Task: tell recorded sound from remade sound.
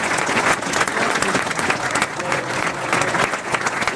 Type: remade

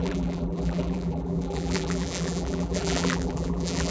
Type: remade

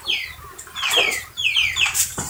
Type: recorded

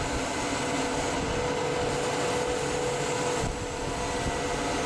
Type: recorded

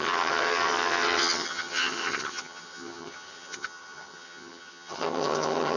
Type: remade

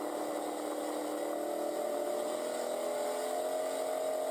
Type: recorded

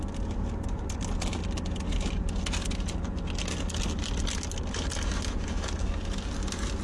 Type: recorded